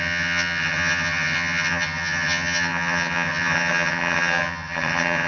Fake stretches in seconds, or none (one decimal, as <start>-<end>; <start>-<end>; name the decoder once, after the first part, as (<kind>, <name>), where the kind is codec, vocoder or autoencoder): 0.0-5.3 (vocoder, HiFi-GAN)